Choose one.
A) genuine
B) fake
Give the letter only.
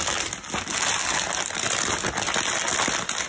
A